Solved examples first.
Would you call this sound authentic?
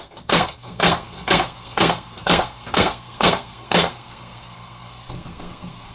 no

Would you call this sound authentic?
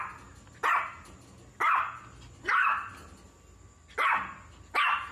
yes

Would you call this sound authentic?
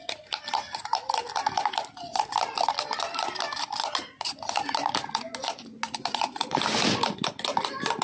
yes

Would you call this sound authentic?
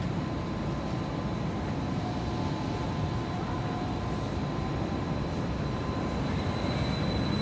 yes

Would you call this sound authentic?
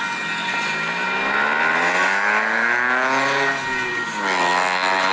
yes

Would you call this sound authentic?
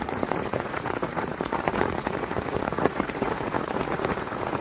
no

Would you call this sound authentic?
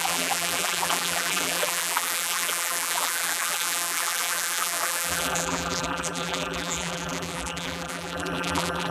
no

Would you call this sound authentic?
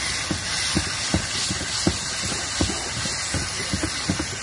yes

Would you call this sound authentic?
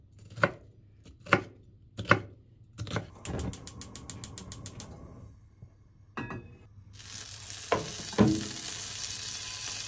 yes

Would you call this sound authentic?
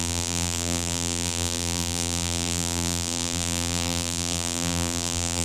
no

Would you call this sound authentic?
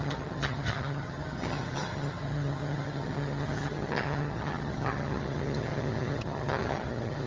no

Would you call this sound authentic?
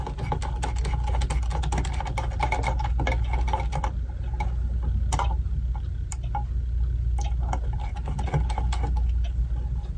yes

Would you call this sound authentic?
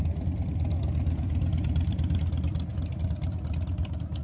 yes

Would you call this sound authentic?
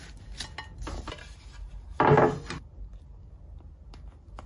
yes